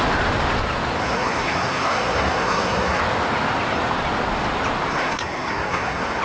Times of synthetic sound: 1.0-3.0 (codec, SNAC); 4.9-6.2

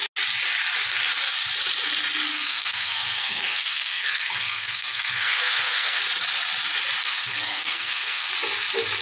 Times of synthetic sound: 2.3-6.0 (codec, SNAC); 7.0-8.3

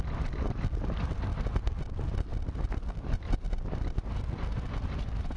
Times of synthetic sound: none

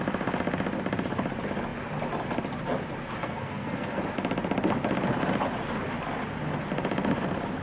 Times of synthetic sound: 3.2-4.0 (codec, SNAC)

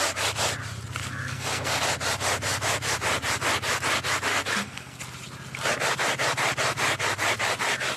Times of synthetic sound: 1.0-1.8 (codec, SNAC); 4.3-5.0